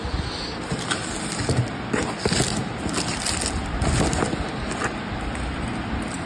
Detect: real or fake real